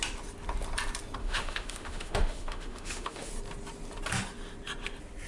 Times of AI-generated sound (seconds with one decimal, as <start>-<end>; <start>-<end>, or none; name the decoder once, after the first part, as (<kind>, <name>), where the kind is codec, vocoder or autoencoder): 1.2-3.3 (autoencoder, DAC-VAE)